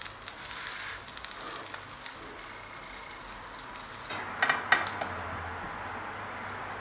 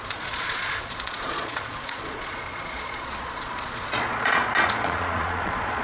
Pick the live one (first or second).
first